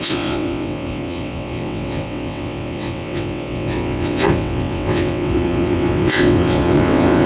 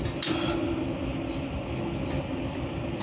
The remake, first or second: first